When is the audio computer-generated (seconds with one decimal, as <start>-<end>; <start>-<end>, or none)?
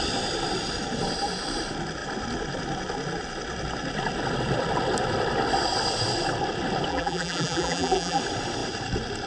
6.9-8.2